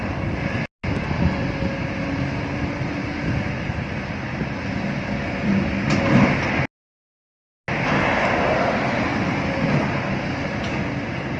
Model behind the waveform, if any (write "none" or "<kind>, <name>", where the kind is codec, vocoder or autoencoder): none